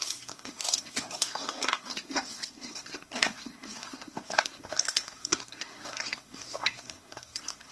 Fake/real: fake